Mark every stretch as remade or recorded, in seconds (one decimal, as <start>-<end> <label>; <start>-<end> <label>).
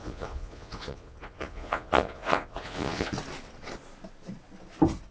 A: 0.0-3.1 remade; 3.1-5.1 recorded